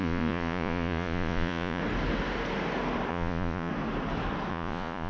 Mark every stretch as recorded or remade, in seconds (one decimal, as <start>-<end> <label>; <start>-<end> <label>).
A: 0.0-1.8 remade; 1.8-3.1 recorded; 3.1-3.7 remade; 3.7-4.5 recorded; 4.5-5.1 remade

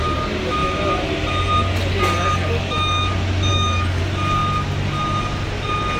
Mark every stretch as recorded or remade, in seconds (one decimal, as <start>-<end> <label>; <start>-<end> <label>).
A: 0.0-1.9 recorded; 1.9-3.1 remade; 3.1-3.5 recorded; 3.5-4.0 remade; 4.0-6.0 recorded

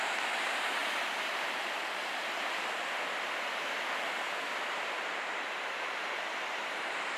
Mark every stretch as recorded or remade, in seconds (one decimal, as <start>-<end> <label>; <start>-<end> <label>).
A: 0.0-0.8 remade; 0.8-4.7 recorded; 4.7-7.2 remade

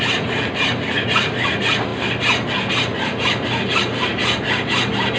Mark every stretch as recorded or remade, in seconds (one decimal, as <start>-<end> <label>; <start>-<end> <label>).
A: 0.0-5.2 recorded

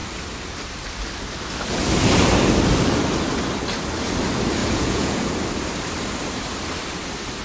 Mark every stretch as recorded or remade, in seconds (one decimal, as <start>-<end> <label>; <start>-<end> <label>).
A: 0.0-4.6 recorded; 4.6-5.3 remade; 5.3-7.4 recorded

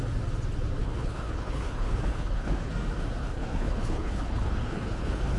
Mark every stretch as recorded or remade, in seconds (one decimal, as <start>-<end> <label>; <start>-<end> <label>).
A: 0.0-0.8 recorded; 0.8-2.7 remade; 2.7-3.2 recorded; 3.2-5.4 remade

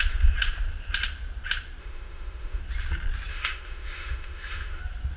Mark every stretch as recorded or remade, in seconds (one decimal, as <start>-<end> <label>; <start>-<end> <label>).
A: 0.0-1.8 recorded; 1.8-2.6 remade; 2.6-3.3 recorded; 3.3-4.8 remade; 4.8-5.2 recorded